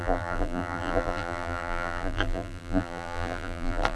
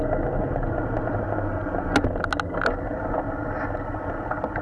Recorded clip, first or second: second